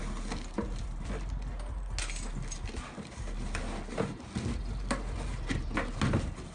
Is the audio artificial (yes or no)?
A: no